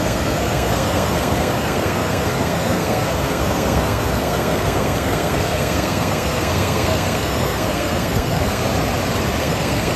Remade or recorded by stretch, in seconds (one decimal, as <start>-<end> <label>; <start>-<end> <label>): 0.0-8.6 remade; 8.6-9.4 recorded; 9.4-10.0 remade